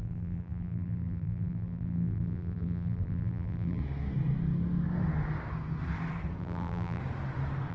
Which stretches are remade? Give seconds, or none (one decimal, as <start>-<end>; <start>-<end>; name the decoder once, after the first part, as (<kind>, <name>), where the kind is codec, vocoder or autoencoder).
0.0-3.8 (vocoder, BigVGAN v2); 6.4-7.0